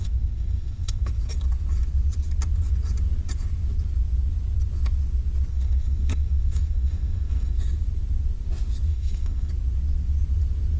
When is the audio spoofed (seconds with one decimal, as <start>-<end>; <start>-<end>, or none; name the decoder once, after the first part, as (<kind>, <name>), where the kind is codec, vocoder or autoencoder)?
0.0-1.1 (codec, SNAC); 5.5-7.6; 8.9-9.5